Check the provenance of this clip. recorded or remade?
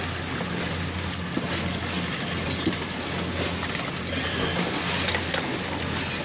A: recorded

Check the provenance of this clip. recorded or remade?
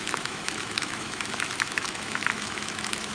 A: remade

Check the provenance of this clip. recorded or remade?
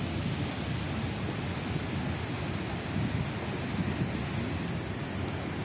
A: recorded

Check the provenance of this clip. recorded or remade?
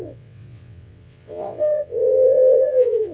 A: remade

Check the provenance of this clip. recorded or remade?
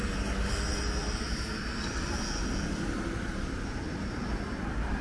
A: recorded